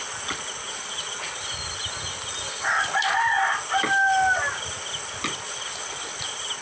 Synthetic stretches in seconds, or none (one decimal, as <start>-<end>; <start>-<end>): none